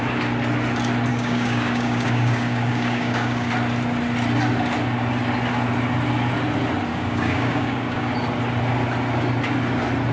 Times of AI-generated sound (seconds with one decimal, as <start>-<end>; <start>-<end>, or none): 1.1-3.5; 6.9-8.1